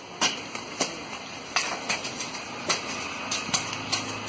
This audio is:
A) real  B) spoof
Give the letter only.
A